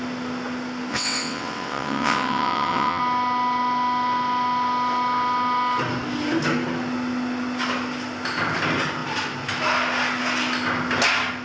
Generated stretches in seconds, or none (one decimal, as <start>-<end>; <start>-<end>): 0.9-3.0